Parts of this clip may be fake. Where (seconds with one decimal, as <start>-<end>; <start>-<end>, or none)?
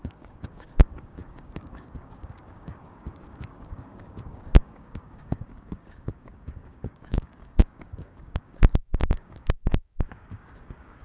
0.0-11.0